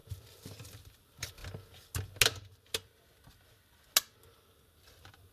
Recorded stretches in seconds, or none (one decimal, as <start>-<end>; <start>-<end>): 0.0-5.3